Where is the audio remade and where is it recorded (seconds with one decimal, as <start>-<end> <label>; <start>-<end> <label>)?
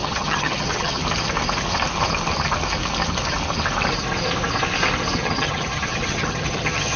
0.0-1.0 remade; 1.0-5.2 recorded; 5.2-7.0 remade